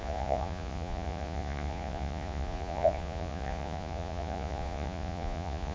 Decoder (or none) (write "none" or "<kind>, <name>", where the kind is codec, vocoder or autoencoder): vocoder, Vocos